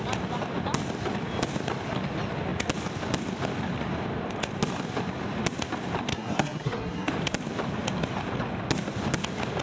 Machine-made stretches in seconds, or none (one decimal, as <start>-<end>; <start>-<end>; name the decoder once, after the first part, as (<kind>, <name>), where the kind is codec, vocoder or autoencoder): 6.1-7.1 (codec, SNAC)